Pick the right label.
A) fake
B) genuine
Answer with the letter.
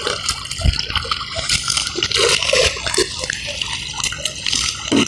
B